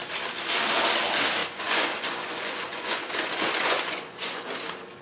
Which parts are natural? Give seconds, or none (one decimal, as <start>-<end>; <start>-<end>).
0.0-1.4; 4.4-5.0